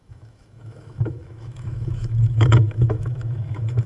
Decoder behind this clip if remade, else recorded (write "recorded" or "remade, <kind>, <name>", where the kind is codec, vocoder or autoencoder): remade, autoencoder, DAC-VAE